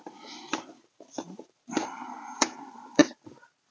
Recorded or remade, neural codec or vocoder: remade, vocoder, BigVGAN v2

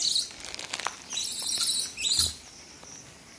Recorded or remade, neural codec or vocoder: recorded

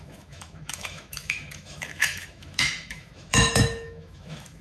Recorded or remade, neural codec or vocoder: remade, autoencoder, DAC-VAE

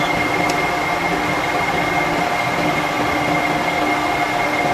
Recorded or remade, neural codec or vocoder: recorded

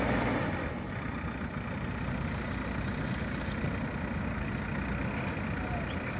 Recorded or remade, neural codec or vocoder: recorded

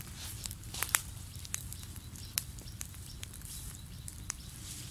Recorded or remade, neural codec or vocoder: remade, vocoder, BigVGAN v2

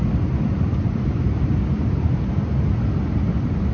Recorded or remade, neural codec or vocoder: recorded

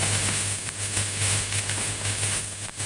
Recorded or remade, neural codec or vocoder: remade, autoencoder, DAC-VAE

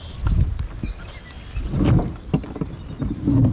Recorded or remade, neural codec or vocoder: recorded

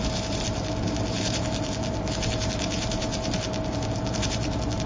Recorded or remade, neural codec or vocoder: remade, vocoder, BigVGAN v2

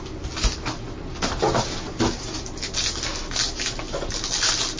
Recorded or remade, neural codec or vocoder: recorded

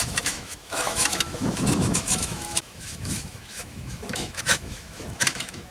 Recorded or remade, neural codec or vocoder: remade, autoencoder, DAC-VAE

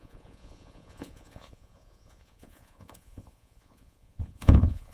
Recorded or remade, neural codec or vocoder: remade, vocoder, Vocos